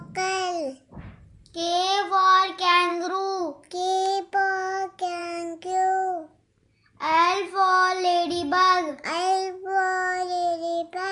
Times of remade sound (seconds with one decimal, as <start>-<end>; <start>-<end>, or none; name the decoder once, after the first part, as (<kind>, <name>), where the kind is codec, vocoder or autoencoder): 2.9-3.4 (autoencoder, DAC-VAE)